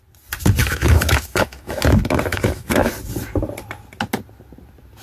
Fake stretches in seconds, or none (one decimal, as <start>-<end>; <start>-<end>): 0.6-1.8; 2.3-2.9